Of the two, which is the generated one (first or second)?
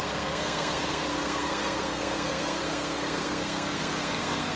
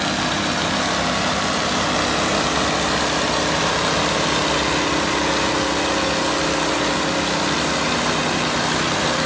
first